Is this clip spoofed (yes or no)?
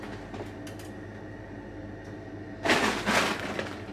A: no